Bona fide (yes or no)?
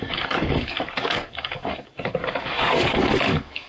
no